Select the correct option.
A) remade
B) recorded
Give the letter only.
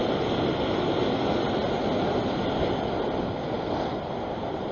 B